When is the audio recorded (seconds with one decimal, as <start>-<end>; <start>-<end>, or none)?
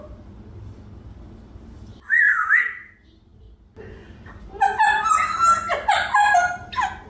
0.0-2.3; 2.9-7.1